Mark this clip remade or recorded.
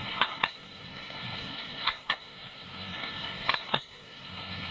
remade